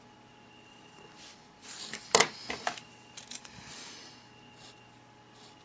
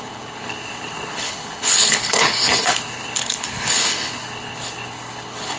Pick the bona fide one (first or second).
first